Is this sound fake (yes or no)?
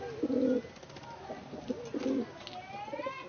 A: no